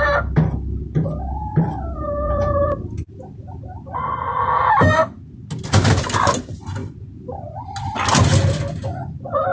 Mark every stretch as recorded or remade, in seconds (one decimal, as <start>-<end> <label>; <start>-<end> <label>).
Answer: 0.0-1.4 recorded; 1.4-3.6 remade; 3.6-9.5 recorded